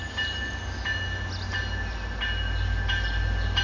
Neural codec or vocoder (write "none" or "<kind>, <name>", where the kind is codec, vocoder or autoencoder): none